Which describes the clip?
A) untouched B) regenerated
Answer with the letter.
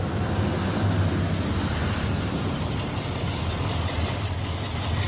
A